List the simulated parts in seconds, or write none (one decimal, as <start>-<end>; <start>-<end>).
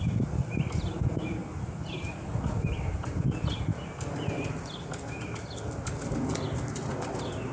none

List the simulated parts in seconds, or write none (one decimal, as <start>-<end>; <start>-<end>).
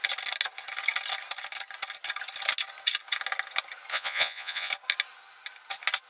3.9-4.7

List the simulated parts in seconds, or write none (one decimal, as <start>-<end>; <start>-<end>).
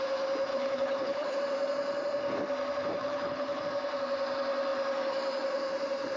0.5-1.4; 3.0-3.6